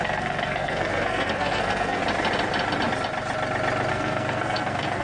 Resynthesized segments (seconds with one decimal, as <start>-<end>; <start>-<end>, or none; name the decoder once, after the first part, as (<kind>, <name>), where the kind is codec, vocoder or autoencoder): 0.0-2.0 (codec, SNAC); 3.9-5.0